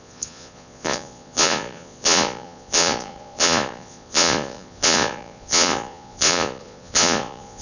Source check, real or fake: fake